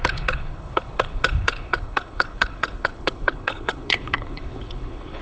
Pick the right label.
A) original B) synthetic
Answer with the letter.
B